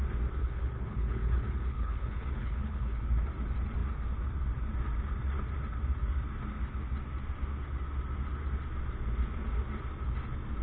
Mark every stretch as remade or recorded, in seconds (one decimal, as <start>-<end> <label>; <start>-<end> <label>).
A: 0.0-0.4 recorded; 0.4-3.0 remade; 3.0-10.6 recorded

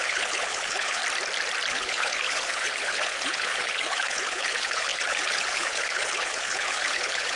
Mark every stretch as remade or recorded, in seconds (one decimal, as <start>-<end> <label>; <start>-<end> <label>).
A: 0.0-1.0 remade; 1.0-1.7 recorded; 1.7-7.4 remade

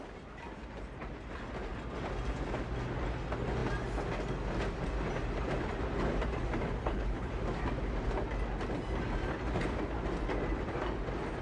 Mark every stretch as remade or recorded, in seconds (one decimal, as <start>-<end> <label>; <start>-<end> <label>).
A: 0.0-6.8 recorded; 6.8-7.3 remade; 7.3-11.4 recorded

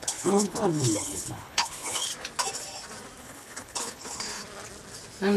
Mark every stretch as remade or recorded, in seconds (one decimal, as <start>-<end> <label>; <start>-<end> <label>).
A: 0.0-2.1 remade; 2.1-3.2 recorded; 3.2-4.4 remade; 4.4-5.4 recorded

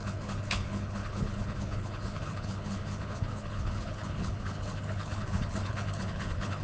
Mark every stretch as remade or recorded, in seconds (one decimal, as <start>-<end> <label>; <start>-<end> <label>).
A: 0.0-6.6 remade

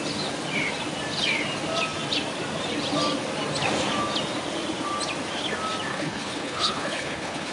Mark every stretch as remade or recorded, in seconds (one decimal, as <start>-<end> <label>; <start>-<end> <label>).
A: 0.0-5.9 recorded; 5.9-7.5 remade